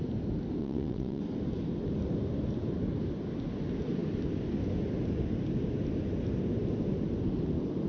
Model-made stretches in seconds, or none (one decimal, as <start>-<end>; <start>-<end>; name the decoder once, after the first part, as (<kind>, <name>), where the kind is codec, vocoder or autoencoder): 0.6-1.2 (vocoder, WaveNeXt)